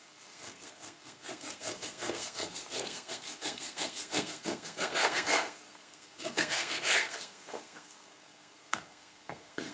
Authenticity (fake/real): fake